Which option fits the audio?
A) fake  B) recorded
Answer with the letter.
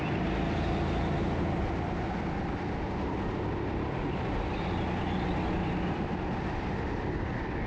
B